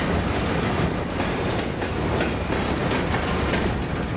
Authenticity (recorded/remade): recorded